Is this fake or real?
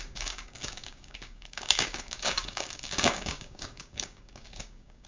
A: fake